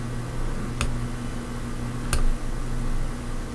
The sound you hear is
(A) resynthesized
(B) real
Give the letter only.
B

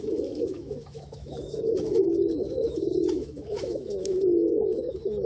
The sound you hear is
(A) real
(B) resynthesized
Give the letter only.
B